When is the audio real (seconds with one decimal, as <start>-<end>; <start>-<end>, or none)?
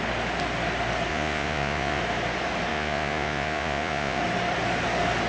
0.0-1.1; 2.0-2.7; 4.2-5.3